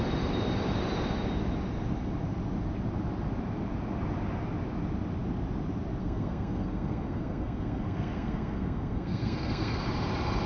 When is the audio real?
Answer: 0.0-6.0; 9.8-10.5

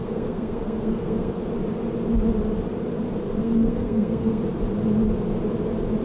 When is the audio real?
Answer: 1.5-3.4; 4.4-6.0

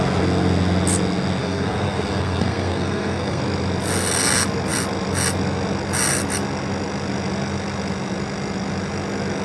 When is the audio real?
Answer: 0.0-1.4; 3.4-9.4

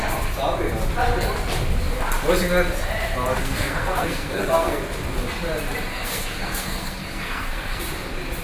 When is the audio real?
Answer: 0.0-3.4; 4.8-5.9; 7.8-8.4

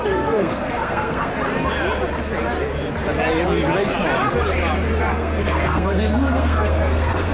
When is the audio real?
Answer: 1.3-5.1

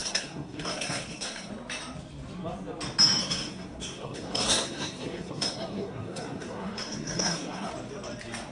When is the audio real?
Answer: 1.5-3.2; 7.7-8.5